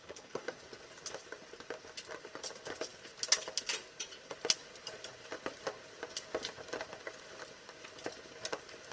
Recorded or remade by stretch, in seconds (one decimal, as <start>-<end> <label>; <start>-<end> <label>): 0.0-0.6 remade; 0.6-8.9 recorded